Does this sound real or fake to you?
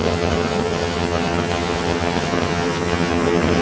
fake